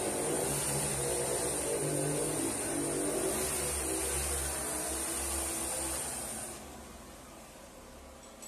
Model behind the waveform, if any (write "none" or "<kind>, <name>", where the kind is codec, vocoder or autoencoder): none